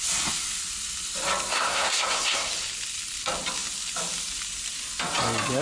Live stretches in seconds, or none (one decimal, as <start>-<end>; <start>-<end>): 0.0-1.5; 2.5-5.6